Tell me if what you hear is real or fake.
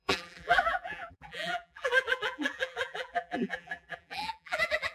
fake